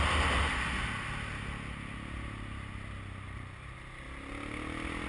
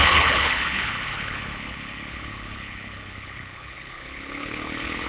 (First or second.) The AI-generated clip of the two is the second